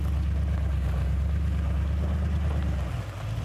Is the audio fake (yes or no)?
no